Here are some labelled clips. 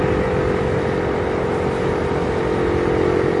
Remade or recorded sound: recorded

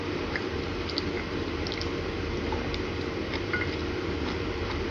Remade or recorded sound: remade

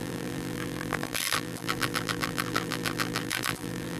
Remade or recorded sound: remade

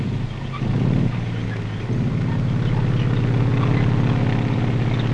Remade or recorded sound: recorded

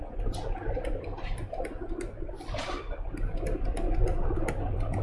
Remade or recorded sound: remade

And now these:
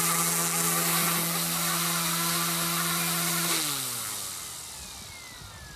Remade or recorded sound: recorded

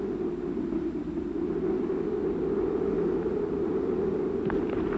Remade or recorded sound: recorded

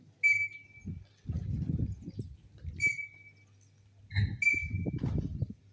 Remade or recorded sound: recorded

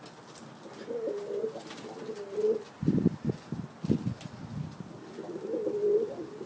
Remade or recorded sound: recorded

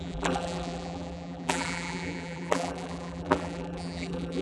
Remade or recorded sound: remade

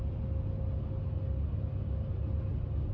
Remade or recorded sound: recorded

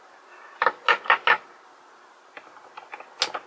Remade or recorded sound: recorded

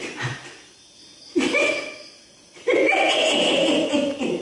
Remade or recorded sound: recorded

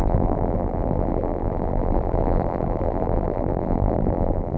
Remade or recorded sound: remade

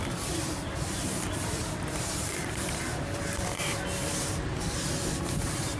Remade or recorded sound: remade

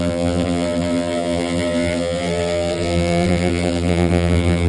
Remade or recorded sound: remade